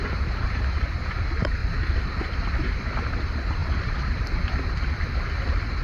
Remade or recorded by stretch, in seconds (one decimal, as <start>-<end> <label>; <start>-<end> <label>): 0.0-1.6 recorded; 1.6-3.0 remade; 3.0-3.6 recorded; 3.6-4.2 remade; 4.2-5.8 recorded